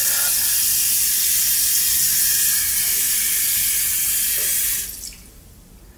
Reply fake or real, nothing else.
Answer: real